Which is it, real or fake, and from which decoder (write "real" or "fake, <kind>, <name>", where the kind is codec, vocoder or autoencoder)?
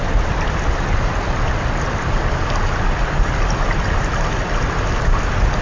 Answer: real